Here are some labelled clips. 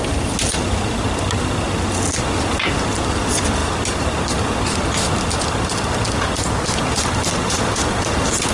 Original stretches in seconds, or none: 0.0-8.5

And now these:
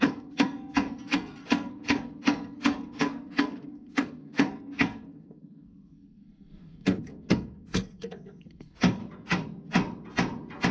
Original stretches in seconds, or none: 9.0-10.7

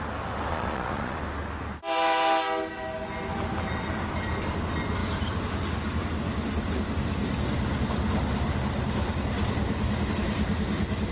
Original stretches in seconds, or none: 0.0-0.5; 1.2-11.1

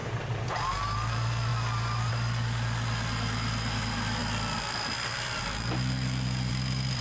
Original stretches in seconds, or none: 0.0-7.0

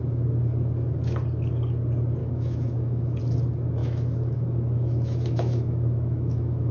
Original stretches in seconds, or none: 0.0-2.2; 3.2-3.8

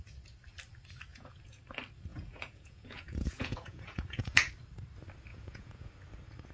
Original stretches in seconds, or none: 0.0-1.1; 1.6-2.1; 4.5-5.3; 5.9-6.5